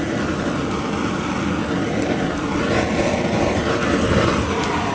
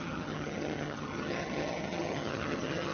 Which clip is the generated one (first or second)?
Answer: second